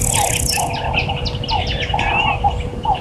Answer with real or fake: real